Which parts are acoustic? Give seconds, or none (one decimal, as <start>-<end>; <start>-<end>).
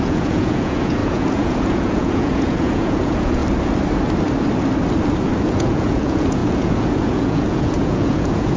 3.4-5.4